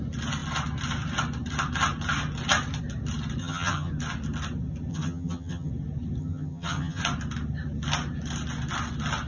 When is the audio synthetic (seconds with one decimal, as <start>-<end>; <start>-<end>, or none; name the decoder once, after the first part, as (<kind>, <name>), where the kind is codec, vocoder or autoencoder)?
3.4-3.9 (vocoder, HiFi-GAN); 4.9-5.7; 6.2-7.0